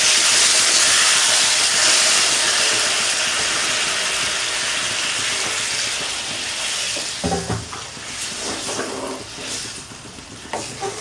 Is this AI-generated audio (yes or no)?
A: no